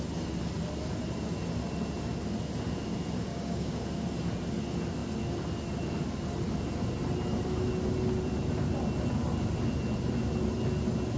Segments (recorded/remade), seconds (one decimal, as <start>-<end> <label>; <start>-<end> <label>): 0.0-3.3 recorded; 3.3-3.8 remade; 3.8-11.2 recorded